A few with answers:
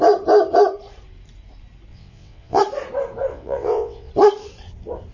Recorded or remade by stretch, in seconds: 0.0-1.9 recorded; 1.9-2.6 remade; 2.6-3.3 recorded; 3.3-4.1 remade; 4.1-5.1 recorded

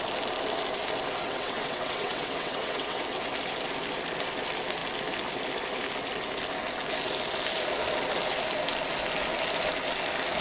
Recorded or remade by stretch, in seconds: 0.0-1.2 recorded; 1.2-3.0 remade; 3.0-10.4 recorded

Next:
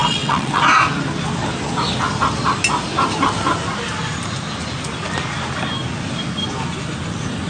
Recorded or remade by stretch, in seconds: 0.0-0.6 remade; 0.6-7.5 recorded

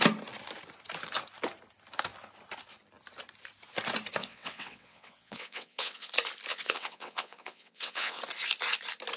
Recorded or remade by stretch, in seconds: 0.0-4.2 recorded; 4.2-6.1 remade; 6.1-6.5 recorded; 6.5-8.2 remade; 8.2-9.2 recorded

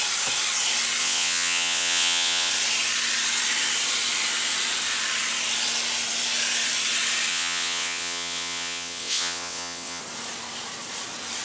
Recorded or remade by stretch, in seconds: 0.0-1.0 recorded; 1.0-2.5 remade; 2.5-7.3 recorded; 7.3-10.0 remade; 10.0-11.4 recorded

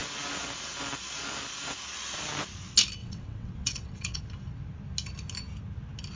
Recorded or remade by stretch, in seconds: 0.0-3.0 recorded; 3.0-4.2 remade; 4.2-6.2 recorded